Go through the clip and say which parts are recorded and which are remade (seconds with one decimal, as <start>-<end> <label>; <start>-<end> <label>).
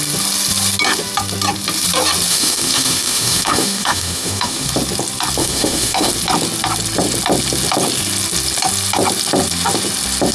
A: 0.0-2.3 recorded; 2.3-4.7 remade; 4.7-5.4 recorded; 5.4-6.1 remade; 6.1-10.3 recorded